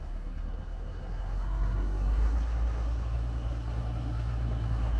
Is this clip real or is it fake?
fake